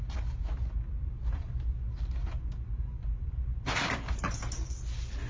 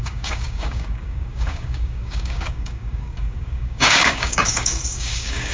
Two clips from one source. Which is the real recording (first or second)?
first